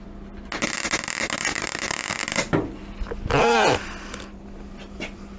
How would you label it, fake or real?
real